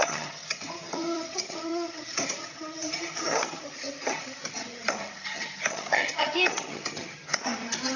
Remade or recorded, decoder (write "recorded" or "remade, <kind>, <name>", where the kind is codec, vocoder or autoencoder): remade, vocoder, HiFi-GAN